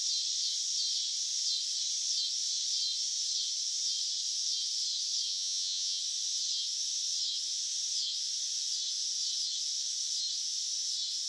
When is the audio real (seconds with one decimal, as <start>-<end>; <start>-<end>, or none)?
0.0-5.3; 6.0-11.3